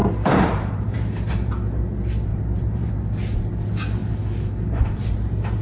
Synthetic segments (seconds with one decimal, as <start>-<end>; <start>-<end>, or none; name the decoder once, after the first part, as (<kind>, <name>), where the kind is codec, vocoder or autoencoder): 0.0-1.5 (vocoder, BigVGAN v2); 2.3-2.9; 4.0-5.1